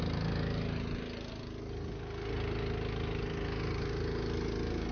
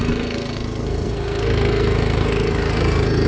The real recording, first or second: first